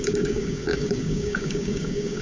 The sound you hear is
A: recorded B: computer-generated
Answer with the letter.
B